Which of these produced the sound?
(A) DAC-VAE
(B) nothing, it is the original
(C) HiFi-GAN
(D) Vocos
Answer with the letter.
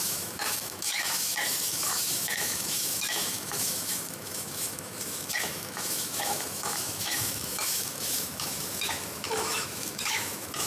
A